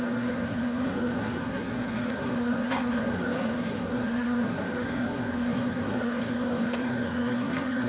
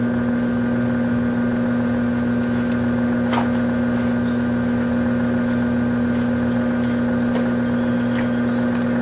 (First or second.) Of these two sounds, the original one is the second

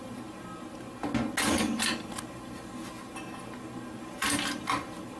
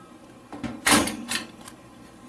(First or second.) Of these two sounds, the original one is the first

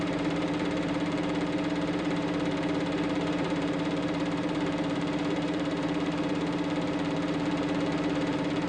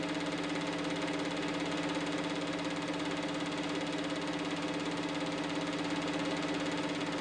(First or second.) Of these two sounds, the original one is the second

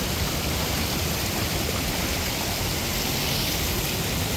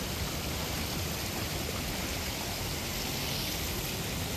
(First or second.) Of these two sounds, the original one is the second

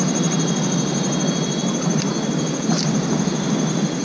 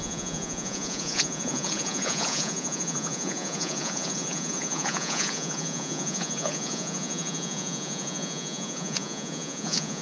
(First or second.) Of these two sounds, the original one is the first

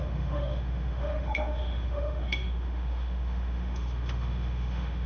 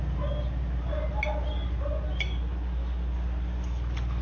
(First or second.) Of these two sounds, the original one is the second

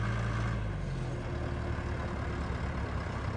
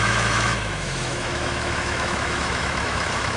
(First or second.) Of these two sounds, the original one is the first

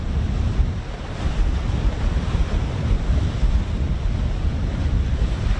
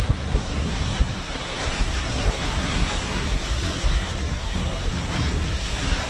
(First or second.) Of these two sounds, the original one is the first